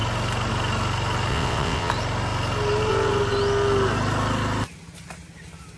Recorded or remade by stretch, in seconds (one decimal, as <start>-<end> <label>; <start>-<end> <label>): 0.0-1.3 recorded; 1.3-1.9 remade; 1.9-5.8 recorded